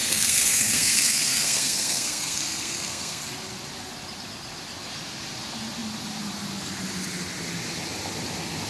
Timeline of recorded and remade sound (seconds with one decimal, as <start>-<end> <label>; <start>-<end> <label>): 0.0-3.2 remade; 3.2-8.7 recorded